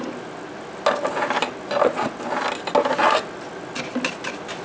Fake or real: real